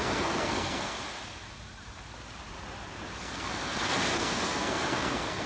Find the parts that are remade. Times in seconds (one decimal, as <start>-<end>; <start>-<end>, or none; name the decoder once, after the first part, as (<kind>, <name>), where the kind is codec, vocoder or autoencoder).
0.0-1.0 (codec, SNAC); 3.2-5.5